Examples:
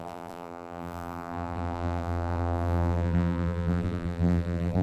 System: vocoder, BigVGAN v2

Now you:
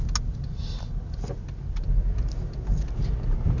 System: none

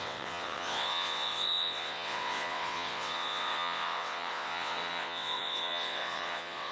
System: vocoder, WaveNeXt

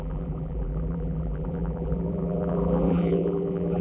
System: vocoder, BigVGAN v2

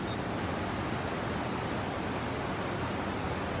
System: none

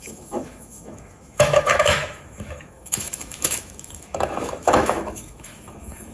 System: autoencoder, DAC-VAE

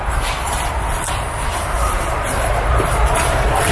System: vocoder, BigVGAN v2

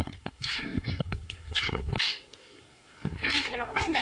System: codec, SNAC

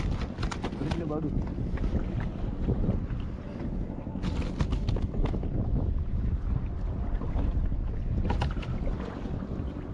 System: none